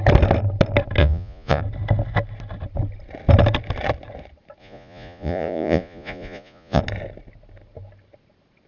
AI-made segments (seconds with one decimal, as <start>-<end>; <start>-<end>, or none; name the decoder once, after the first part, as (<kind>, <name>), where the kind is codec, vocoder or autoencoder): 1.0-1.6 (vocoder, Vocos); 4.6-6.8